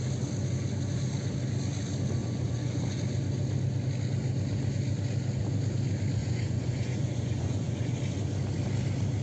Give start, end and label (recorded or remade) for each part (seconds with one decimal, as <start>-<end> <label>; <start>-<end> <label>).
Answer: 0.0-2.2 recorded; 2.2-2.8 remade; 2.8-6.2 recorded; 6.2-8.0 remade; 8.0-9.2 recorded